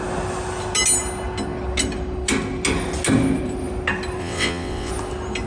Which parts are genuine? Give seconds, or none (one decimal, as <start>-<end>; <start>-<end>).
0.0-4.2; 4.9-5.5

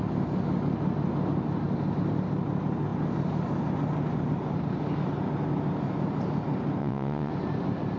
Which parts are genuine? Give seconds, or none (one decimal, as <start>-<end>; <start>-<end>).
0.0-6.8; 7.3-8.0

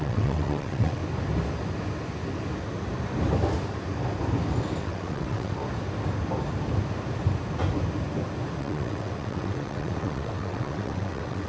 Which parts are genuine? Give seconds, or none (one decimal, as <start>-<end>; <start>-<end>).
1.0-4.8; 5.6-8.6

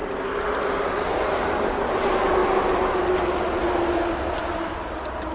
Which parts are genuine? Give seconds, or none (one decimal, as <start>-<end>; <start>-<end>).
0.0-5.3